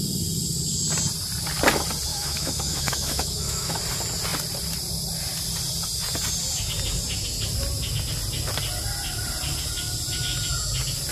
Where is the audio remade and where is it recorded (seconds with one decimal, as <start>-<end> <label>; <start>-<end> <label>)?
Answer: 0.0-2.1 recorded; 2.1-3.8 remade; 3.8-11.1 recorded